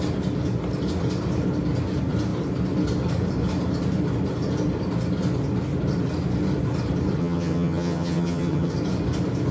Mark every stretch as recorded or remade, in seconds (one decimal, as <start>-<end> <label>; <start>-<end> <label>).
0.0-7.2 recorded; 7.2-8.7 remade; 8.7-9.5 recorded